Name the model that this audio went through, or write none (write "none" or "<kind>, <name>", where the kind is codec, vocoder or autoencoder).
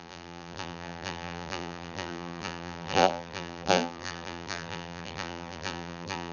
vocoder, BigVGAN v2